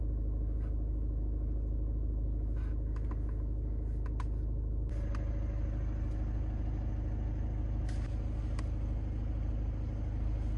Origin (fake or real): real